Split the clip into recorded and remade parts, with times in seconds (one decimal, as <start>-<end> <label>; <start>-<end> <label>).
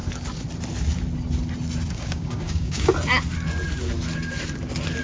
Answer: 0.0-1.9 recorded; 1.9-2.9 remade; 2.9-5.0 recorded